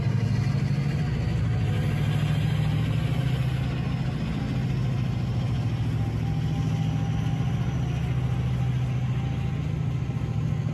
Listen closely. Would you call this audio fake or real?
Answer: real